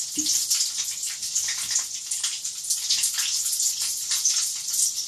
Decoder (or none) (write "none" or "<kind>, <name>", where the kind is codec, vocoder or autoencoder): none